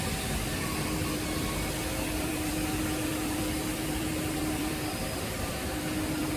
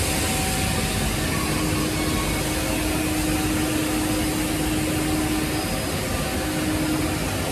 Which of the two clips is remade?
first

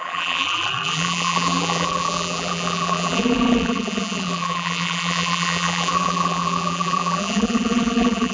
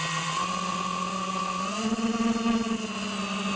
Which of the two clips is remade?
first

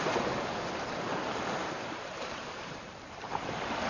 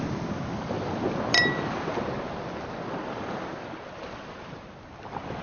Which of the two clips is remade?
first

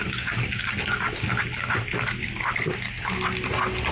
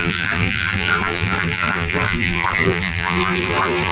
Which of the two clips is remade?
second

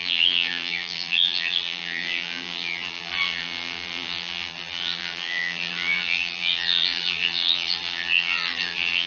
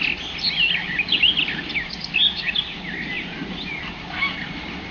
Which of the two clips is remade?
first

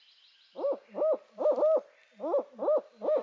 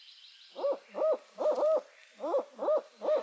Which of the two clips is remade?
second